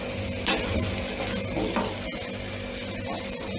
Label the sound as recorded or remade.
recorded